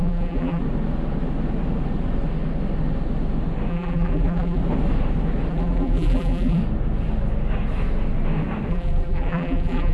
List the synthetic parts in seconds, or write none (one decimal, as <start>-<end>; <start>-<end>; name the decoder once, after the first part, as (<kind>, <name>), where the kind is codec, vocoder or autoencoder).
0.0-0.6 (vocoder, BigVGAN v2); 3.7-4.6; 5.5-6.6; 8.7-9.9